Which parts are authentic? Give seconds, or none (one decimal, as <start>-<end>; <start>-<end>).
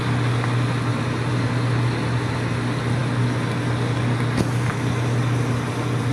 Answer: 0.0-0.9; 1.5-6.1